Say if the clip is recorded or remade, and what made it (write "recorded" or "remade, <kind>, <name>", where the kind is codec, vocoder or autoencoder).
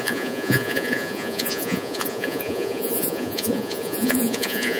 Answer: remade, vocoder, Vocos